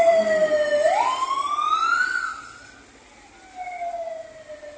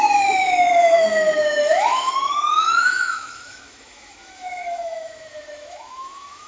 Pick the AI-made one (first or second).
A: second